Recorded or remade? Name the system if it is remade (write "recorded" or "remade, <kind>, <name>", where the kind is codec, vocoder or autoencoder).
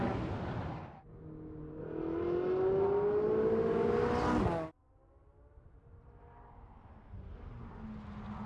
recorded